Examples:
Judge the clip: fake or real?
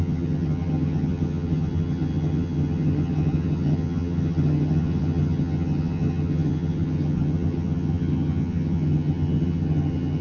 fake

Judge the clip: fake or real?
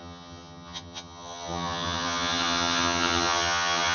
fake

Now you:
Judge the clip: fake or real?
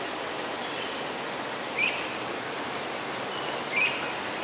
real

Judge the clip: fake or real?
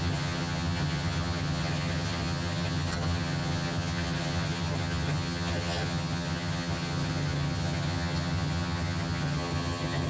fake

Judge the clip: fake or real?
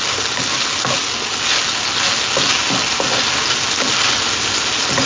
real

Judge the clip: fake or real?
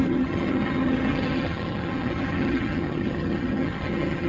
fake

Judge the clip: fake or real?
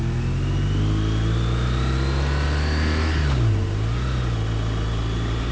real